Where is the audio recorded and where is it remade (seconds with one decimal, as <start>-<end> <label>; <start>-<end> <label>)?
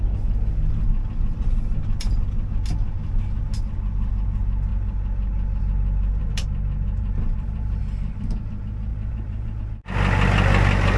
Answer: 0.0-6.2 recorded; 6.2-7.8 remade; 7.8-8.9 recorded; 8.9-9.6 remade; 9.6-11.0 recorded